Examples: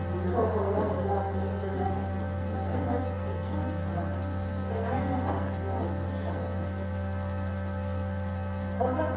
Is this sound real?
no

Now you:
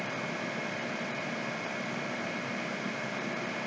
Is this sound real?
no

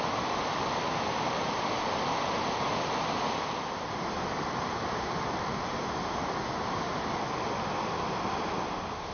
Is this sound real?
yes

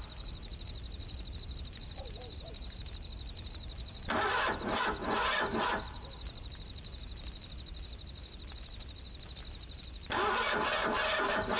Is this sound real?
yes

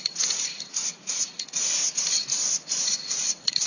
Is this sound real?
no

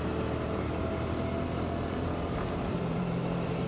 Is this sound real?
yes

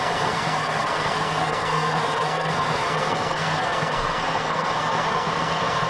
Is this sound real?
no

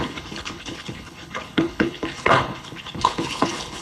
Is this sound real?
no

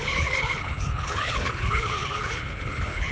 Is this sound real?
no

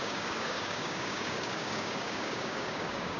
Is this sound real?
no